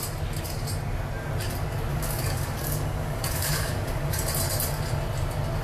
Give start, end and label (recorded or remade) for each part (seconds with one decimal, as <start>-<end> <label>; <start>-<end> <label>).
0.0-1.9 recorded; 1.9-4.1 remade; 4.1-5.6 recorded